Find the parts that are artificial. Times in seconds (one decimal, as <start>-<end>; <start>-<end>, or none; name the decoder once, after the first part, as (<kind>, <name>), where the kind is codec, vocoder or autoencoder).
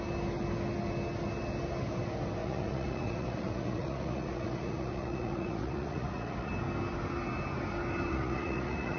2.4-6.5 (vocoder, Vocos); 8.1-9.0